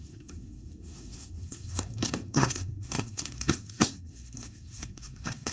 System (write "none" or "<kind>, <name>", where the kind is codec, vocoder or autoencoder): codec, SNAC